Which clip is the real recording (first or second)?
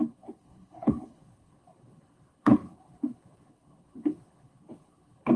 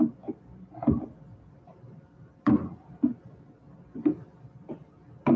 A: second